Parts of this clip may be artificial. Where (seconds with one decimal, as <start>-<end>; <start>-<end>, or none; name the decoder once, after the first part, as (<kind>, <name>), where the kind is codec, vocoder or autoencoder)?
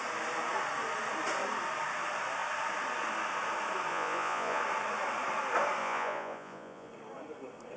3.9-4.6 (vocoder, Vocos); 5.8-6.9